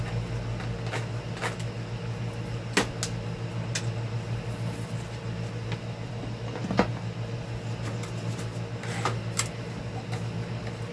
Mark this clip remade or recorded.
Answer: recorded